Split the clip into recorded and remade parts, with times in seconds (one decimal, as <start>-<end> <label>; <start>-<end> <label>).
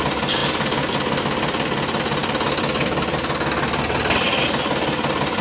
0.0-5.4 recorded